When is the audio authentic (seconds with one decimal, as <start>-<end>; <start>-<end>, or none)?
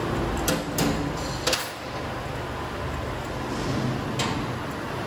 0.0-5.1